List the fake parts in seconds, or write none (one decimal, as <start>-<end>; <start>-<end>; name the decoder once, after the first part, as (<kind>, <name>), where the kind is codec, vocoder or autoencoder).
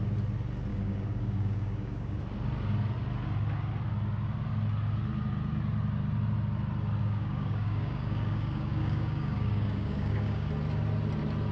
0.7-2.2 (codec, DAC); 7.0-10.5